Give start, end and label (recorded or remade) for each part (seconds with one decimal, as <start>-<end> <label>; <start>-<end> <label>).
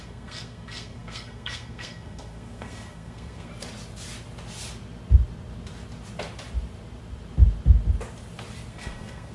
0.0-3.5 remade; 3.5-8.7 recorded; 8.7-9.3 remade